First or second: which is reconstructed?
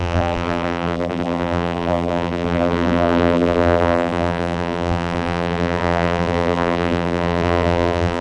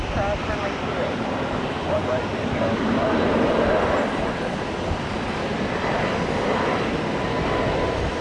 first